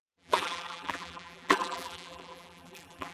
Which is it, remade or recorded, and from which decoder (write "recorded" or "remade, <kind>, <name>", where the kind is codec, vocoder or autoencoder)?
remade, vocoder, BigVGAN v2